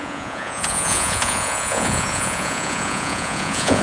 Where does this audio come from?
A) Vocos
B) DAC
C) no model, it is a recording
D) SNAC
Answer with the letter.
A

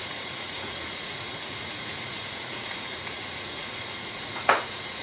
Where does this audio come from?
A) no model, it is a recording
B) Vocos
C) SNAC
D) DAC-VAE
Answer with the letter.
B